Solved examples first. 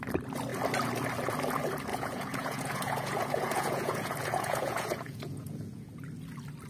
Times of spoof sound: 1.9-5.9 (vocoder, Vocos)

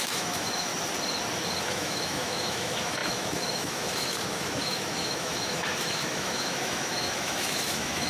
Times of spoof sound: 0.0-0.7 (autoencoder, DAC-VAE); 1.6-8.1